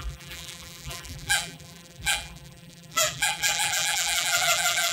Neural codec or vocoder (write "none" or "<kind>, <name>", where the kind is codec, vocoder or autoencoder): vocoder, BigVGAN v2